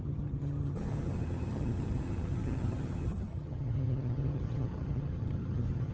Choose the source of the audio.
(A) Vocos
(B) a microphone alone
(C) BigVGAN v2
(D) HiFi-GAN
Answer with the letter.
D